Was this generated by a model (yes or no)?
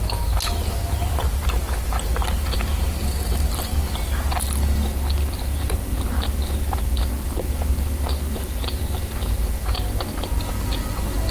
no